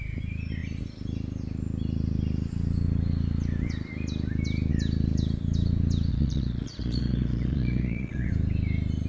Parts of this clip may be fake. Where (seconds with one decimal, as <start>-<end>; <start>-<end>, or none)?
6.1-8.3